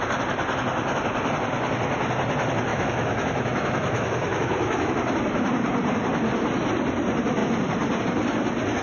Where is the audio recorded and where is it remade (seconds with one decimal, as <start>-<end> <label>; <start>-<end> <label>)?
0.0-2.7 recorded; 2.7-4.9 remade; 4.9-8.8 recorded